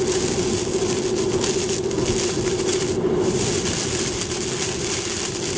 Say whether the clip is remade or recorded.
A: recorded